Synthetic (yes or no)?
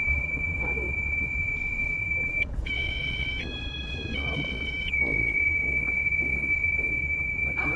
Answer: yes